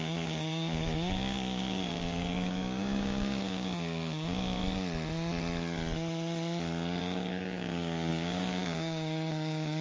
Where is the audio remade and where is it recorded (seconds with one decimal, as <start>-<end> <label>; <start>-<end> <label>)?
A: 0.0-4.6 remade; 4.6-7.0 recorded; 7.0-9.8 remade